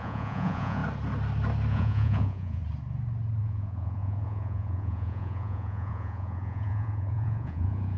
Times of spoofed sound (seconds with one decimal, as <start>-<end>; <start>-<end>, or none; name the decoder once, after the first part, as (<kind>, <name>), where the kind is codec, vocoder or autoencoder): 0.0-0.8 (vocoder, Vocos); 1.7-2.6; 3.4-8.0

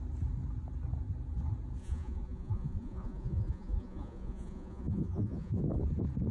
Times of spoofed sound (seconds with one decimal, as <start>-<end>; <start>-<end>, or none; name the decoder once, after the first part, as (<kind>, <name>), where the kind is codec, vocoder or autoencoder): 1.8-5.6 (vocoder, Vocos)

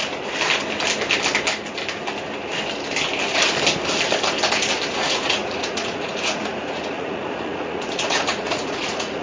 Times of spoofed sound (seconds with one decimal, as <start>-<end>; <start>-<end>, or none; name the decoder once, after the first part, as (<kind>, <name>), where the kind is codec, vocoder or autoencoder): 4.9-9.2 (vocoder, Vocos)

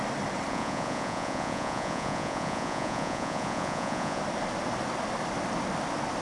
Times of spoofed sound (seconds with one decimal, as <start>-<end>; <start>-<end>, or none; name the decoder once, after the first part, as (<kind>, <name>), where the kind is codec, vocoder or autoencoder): 0.5-4.2 (vocoder, Vocos)

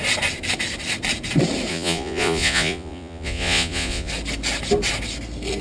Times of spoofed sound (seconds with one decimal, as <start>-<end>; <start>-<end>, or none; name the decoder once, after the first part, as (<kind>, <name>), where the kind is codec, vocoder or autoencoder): 1.7-4.1 (vocoder, Vocos)

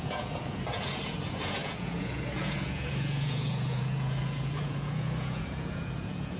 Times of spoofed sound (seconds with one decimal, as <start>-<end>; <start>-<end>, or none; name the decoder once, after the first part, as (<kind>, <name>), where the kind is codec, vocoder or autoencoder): 0.0-6.4 (vocoder, Vocos)